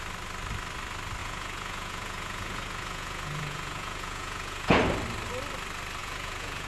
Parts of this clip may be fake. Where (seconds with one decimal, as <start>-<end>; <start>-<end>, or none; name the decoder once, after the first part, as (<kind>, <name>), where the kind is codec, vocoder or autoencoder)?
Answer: 1.2-4.8 (vocoder, Vocos); 6.0-6.7